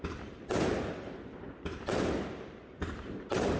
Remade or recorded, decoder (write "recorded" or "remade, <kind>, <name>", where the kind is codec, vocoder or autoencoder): recorded